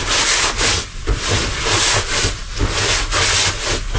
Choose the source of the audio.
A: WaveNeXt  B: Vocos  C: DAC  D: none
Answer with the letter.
D